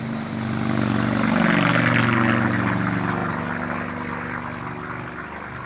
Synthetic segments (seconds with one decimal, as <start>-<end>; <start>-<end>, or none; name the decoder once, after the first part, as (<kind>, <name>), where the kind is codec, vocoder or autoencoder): none